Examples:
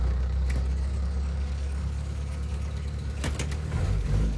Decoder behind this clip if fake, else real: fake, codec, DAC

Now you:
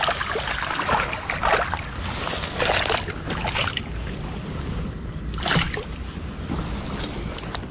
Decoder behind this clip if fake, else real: real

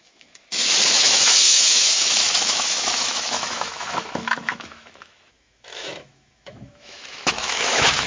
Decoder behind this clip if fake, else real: fake, autoencoder, DAC-VAE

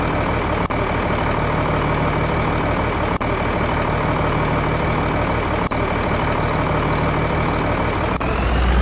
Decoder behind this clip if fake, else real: real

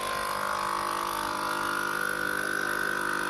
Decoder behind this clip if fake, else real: real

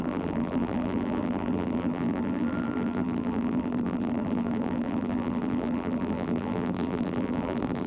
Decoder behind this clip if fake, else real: fake, vocoder, BigVGAN v2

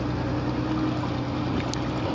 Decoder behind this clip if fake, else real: real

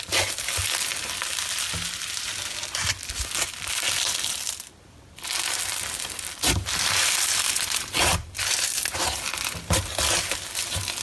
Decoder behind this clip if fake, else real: real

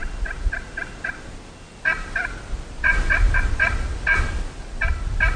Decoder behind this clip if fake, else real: real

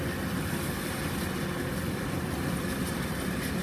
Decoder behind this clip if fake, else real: real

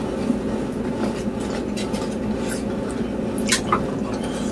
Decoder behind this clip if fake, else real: real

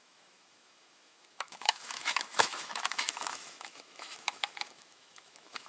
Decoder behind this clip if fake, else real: fake, autoencoder, DAC-VAE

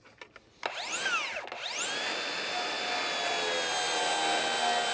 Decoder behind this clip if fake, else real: real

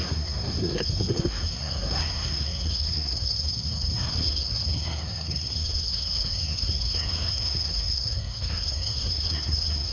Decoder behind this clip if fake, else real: fake, codec, SNAC